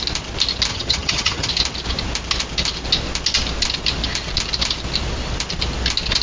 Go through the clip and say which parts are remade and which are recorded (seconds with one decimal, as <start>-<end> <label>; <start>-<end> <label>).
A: 0.0-0.7 recorded; 0.7-1.5 remade; 1.5-6.2 recorded